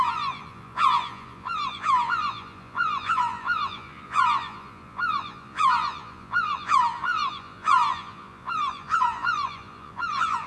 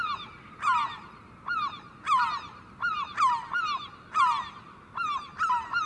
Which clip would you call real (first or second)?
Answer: second